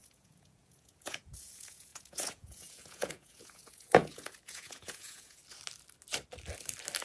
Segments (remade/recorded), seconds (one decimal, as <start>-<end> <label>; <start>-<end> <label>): 0.0-5.4 remade; 5.4-7.0 recorded